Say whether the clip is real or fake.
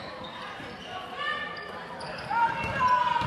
real